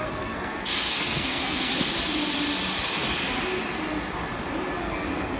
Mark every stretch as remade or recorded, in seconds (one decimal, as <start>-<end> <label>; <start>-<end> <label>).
0.0-1.7 remade; 1.7-4.8 recorded; 4.8-5.4 remade

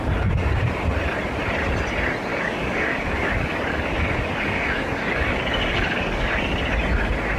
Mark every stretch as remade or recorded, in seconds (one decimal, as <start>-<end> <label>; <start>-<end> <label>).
0.0-2.3 recorded; 2.3-6.3 remade; 6.3-7.4 recorded

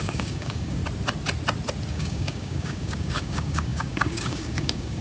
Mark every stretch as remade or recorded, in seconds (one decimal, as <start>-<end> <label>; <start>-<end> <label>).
0.0-0.8 remade; 0.8-1.9 recorded; 1.9-5.0 remade

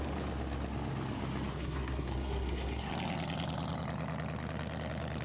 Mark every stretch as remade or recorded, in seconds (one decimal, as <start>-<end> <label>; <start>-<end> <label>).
0.0-1.5 recorded; 1.5-2.9 remade; 2.9-5.2 recorded

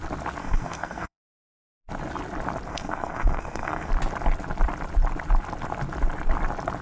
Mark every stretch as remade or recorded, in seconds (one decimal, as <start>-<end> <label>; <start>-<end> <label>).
0.0-0.4 recorded; 0.4-1.8 remade; 1.8-2.7 recorded; 2.7-3.9 remade; 3.9-6.8 recorded

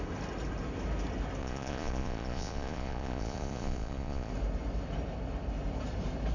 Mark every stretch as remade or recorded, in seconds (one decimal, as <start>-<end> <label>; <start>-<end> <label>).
0.0-1.4 recorded; 1.4-4.3 remade; 4.3-6.3 recorded

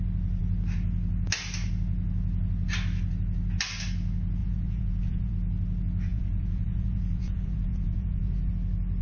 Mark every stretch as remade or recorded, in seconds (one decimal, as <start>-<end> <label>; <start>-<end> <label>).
0.0-4.4 recorded; 4.4-5.3 remade; 5.3-6.1 recorded; 6.1-8.5 remade; 8.5-9.0 recorded

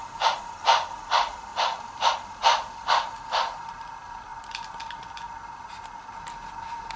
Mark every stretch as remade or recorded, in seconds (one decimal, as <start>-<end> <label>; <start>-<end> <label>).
0.0-4.3 remade; 4.3-6.2 recorded; 6.2-7.0 remade